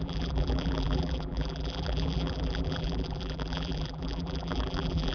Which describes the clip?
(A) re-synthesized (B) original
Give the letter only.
A